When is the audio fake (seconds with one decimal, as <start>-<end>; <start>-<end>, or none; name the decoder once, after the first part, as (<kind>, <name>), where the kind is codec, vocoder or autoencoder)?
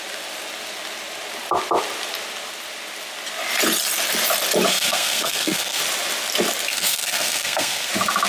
4.7-5.8 (codec, SNAC); 6.7-7.9